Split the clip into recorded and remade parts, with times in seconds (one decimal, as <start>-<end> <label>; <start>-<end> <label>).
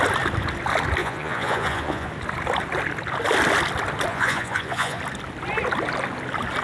0.0-1.0 recorded; 1.0-2.1 remade; 2.1-4.1 recorded; 4.1-5.0 remade; 5.0-6.6 recorded